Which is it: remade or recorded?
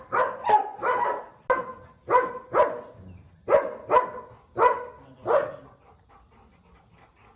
recorded